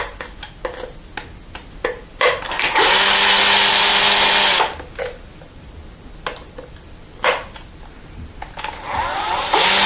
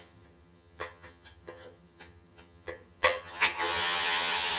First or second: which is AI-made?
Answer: second